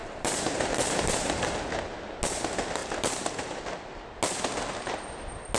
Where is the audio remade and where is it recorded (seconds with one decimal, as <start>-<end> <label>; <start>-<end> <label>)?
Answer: 0.0-1.6 remade; 1.6-2.8 recorded; 2.8-3.6 remade; 3.6-5.6 recorded